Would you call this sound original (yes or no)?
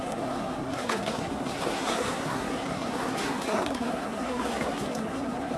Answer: no